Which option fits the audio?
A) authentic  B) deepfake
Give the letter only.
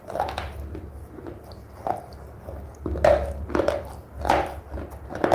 A